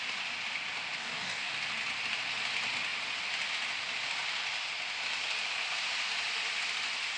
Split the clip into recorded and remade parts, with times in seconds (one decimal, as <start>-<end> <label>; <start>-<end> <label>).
0.0-1.0 recorded; 1.0-1.5 remade; 1.5-7.2 recorded